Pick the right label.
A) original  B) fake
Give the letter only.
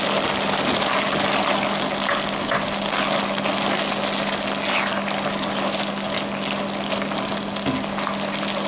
A